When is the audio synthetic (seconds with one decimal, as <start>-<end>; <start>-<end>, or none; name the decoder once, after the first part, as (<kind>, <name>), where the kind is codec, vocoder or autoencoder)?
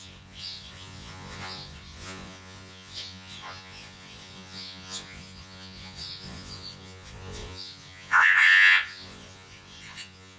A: 0.0-10.4 (vocoder, Vocos)